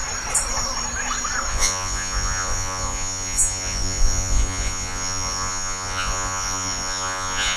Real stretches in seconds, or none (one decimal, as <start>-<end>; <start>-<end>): 0.0-1.5